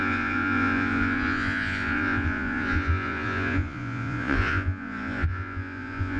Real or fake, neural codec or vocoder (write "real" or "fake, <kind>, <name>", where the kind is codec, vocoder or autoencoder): fake, vocoder, Vocos